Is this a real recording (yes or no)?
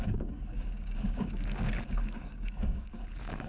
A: no